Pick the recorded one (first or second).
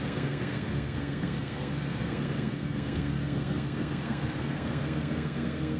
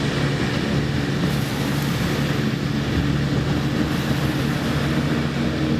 second